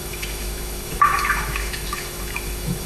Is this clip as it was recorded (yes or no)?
no